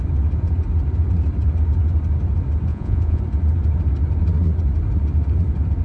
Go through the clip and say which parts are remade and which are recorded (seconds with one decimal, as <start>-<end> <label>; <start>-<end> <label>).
0.0-2.7 recorded; 2.7-3.2 remade; 3.2-5.8 recorded